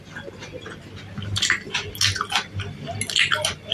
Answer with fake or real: real